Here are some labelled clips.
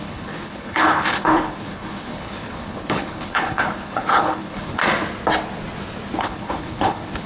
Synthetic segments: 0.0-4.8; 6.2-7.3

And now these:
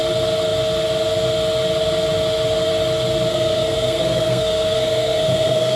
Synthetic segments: 3.3-5.8

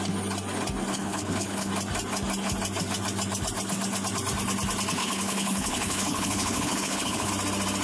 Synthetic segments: 0.9-1.7; 5.0-7.3

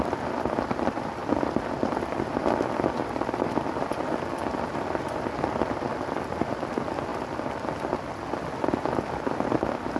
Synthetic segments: none

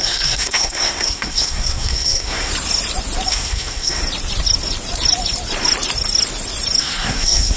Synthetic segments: 0.0-2.5; 3.3-4.0; 6.8-7.6